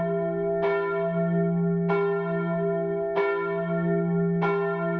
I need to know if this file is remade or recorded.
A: recorded